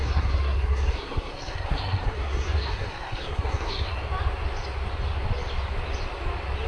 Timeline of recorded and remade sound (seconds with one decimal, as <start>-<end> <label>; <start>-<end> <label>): 0.0-4.0 remade; 4.0-6.7 recorded